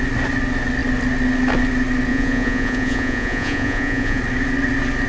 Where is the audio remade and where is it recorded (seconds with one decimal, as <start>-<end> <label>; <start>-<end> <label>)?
0.0-2.1 recorded; 2.1-4.2 remade; 4.2-5.1 recorded